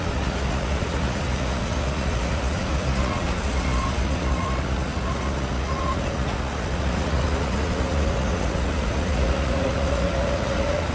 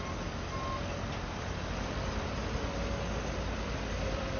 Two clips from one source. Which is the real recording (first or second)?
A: second